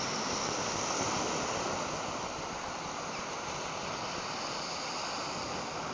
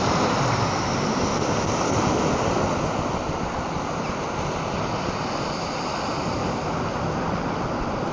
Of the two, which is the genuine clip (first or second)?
second